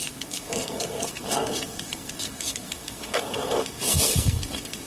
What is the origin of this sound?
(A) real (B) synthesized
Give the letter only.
B